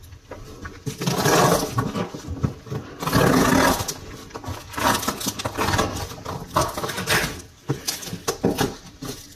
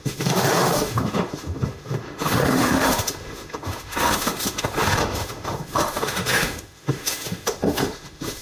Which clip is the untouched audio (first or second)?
first